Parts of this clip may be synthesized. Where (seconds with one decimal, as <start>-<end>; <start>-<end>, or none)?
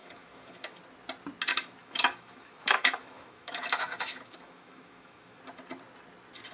0.0-0.8; 1.5-5.4